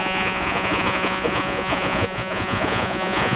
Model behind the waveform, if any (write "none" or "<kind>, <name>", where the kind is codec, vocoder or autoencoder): vocoder, Vocos